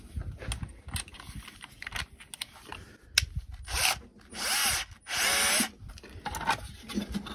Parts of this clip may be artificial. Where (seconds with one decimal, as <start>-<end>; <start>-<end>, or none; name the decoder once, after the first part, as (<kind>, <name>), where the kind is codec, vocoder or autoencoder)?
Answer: none